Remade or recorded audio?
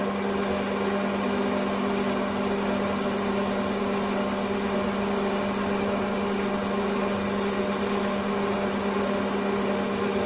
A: recorded